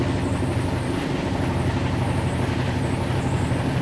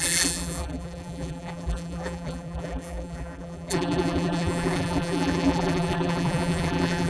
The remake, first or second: second